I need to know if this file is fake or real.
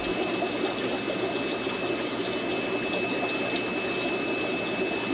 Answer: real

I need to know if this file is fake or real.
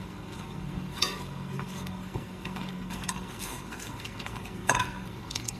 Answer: fake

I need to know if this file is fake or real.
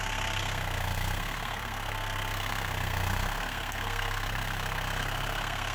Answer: fake